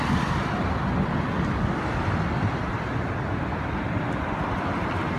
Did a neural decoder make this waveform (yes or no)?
no